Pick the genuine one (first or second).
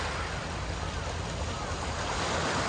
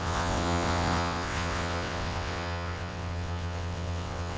first